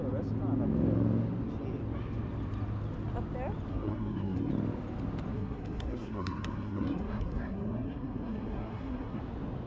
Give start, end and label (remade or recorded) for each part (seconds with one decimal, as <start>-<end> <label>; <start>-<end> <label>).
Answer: 0.0-3.7 recorded; 3.7-4.5 remade; 4.5-5.3 recorded; 5.3-9.2 remade; 9.2-9.7 recorded